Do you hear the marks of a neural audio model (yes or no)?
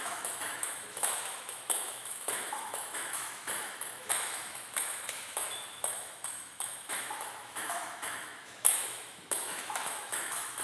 yes